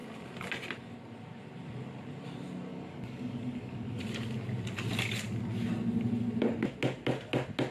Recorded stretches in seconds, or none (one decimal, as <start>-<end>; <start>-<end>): 0.0-2.7; 4.0-7.7